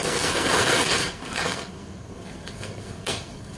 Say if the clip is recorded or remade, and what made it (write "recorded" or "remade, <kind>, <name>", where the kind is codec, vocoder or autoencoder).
remade, codec, SNAC